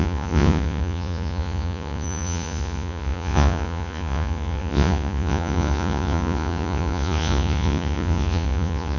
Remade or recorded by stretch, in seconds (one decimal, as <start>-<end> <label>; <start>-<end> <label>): 0.0-9.0 remade